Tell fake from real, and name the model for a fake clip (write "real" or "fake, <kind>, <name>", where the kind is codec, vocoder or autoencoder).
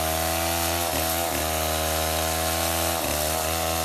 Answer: real